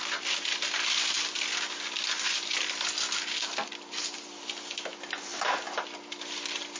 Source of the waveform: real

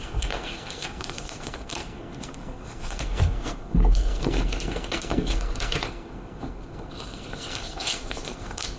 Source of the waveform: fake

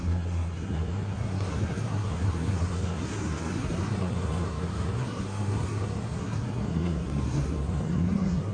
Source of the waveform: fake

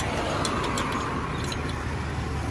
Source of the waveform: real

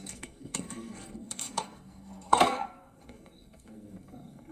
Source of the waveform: fake